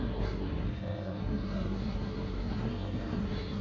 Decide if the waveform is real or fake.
fake